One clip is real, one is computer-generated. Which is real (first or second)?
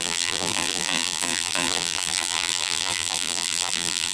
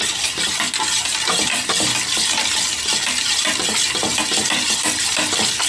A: second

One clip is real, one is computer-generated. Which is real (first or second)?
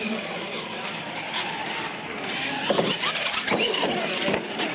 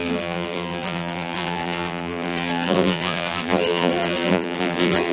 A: first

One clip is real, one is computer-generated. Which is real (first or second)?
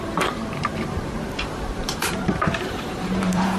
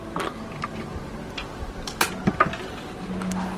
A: second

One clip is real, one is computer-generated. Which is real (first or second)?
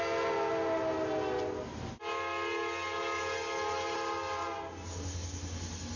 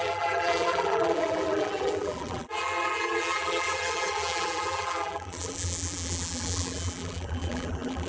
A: first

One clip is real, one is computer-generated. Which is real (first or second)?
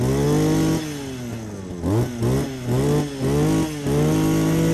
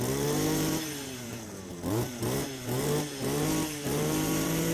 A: first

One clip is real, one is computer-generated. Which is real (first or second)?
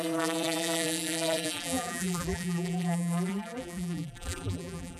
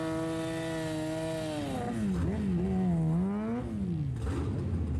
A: second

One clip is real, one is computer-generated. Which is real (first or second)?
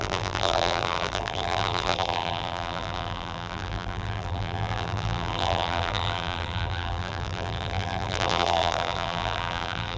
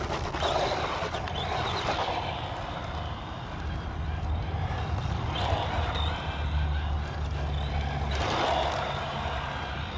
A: second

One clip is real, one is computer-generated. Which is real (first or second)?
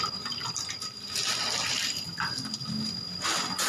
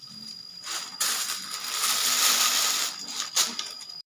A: first